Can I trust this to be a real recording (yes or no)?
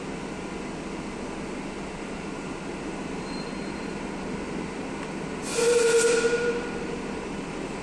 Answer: yes